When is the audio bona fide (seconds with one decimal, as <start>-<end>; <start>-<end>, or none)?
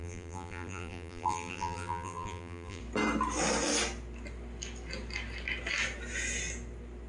2.8-7.1